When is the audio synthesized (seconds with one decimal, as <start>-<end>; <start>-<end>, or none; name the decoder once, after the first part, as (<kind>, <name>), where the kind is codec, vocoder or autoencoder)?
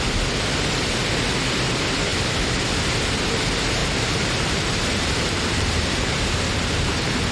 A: 3.8-6.2 (vocoder, BigVGAN v2)